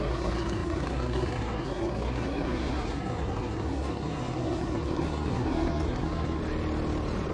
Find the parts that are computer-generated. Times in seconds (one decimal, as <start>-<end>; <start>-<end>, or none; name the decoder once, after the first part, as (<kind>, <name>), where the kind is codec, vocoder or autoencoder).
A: 0.0-6.4 (codec, SNAC)